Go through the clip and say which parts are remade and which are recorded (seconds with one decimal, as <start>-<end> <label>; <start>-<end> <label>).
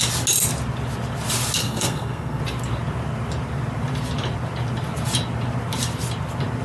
0.0-1.6 recorded; 1.6-2.4 remade; 2.4-6.6 recorded